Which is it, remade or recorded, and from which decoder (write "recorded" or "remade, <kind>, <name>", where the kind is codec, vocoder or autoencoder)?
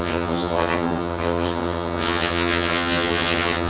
remade, vocoder, HiFi-GAN